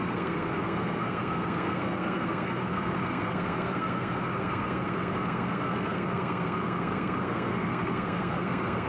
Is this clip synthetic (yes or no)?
yes